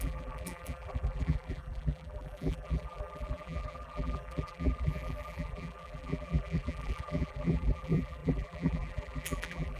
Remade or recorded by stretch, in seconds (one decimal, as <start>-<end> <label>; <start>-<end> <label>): 0.0-9.8 remade